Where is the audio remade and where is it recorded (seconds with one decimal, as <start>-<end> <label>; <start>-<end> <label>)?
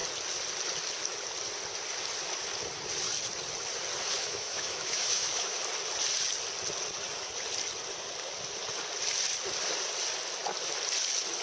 0.0-4.2 recorded; 4.2-5.6 remade; 5.6-11.4 recorded